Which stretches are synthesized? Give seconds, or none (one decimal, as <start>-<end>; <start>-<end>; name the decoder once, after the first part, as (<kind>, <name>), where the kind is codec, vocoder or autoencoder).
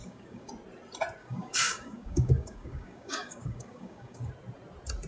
0.0-0.5 (codec, DAC); 1.2-4.3